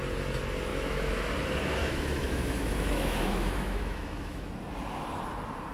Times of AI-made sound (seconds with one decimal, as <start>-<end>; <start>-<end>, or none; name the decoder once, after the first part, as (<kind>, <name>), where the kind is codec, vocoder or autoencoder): 0.7-1.3 (autoencoder, DAC-VAE); 1.8-4.5